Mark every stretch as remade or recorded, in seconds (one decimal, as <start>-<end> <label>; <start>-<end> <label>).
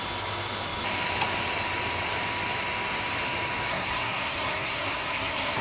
0.0-3.7 recorded; 3.7-5.6 remade